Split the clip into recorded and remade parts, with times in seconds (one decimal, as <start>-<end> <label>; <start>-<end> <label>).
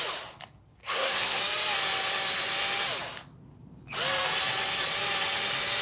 0.0-0.8 recorded; 0.8-1.4 remade; 1.4-5.8 recorded